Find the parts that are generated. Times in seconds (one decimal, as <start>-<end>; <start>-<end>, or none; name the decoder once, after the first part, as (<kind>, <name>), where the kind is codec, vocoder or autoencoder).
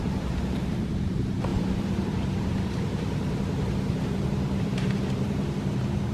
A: 0.0-6.1 (vocoder, BigVGAN v2)